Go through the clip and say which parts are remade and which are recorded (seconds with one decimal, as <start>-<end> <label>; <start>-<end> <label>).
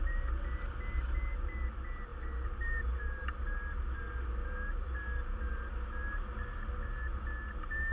0.0-7.9 recorded